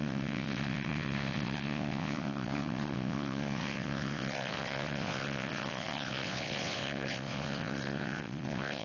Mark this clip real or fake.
fake